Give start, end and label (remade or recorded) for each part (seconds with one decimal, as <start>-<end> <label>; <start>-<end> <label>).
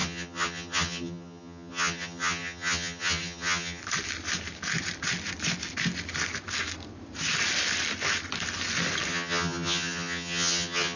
0.0-3.8 remade; 3.8-9.1 recorded; 9.1-11.0 remade